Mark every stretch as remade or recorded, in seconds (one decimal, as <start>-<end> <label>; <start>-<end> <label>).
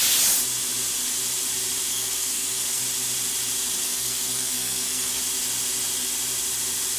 0.0-1.9 recorded; 1.9-2.8 remade; 2.8-3.8 recorded; 3.8-5.2 remade; 5.2-7.0 recorded